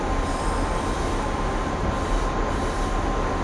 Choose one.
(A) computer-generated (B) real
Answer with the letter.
B